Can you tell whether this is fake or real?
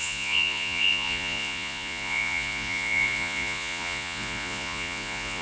fake